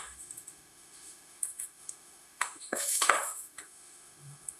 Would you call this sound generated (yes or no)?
yes